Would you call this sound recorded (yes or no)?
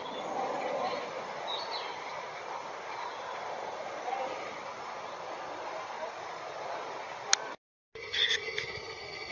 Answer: yes